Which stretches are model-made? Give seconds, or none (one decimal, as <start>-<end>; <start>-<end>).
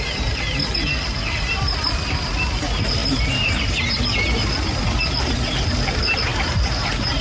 3.0-3.9; 6.3-7.2